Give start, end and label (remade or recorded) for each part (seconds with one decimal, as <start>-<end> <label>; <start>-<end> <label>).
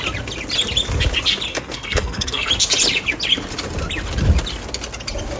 0.0-1.5 recorded; 1.5-2.5 remade; 2.5-5.4 recorded